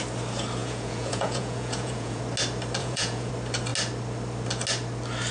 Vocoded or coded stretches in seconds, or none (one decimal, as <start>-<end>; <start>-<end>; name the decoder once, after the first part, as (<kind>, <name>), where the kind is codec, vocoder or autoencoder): 0.6-2.2 (vocoder, Vocos); 2.8-3.3